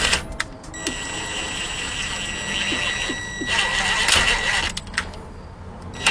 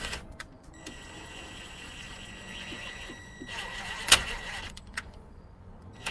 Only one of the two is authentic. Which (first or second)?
first